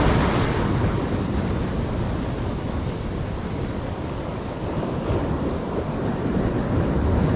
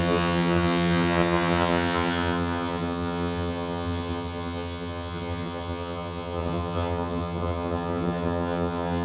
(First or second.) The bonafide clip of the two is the first